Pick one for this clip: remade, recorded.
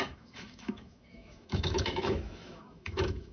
remade